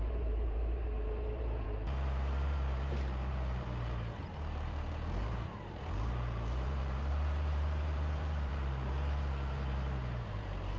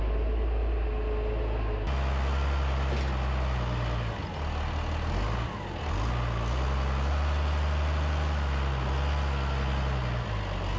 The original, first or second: second